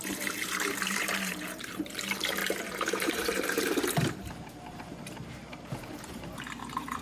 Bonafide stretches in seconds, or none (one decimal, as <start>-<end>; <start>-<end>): none